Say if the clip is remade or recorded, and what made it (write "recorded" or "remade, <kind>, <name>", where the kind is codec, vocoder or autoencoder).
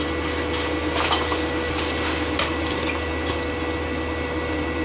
recorded